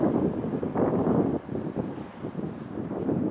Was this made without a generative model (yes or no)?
no